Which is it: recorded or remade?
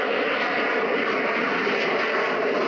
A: recorded